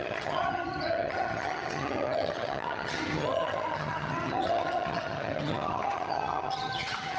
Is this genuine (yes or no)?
no